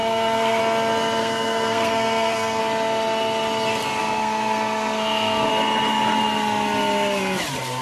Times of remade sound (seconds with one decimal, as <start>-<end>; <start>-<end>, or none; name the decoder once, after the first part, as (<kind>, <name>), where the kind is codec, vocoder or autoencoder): 0.0-0.6 (codec, SNAC); 1.2-2.6; 4.0-5.5